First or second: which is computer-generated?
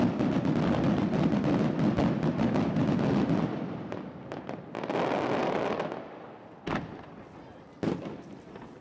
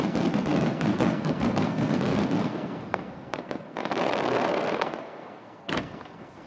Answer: second